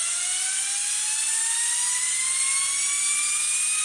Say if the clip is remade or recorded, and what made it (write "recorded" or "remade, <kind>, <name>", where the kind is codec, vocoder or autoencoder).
recorded